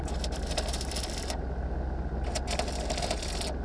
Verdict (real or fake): real